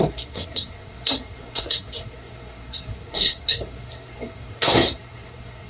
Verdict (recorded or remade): remade